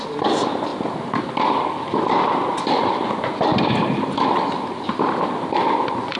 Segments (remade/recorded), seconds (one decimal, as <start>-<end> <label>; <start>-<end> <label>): 0.0-6.2 recorded